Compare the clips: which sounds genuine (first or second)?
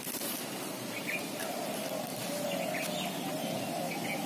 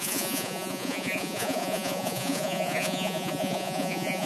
first